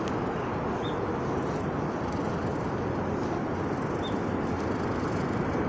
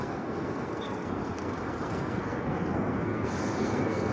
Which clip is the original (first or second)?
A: first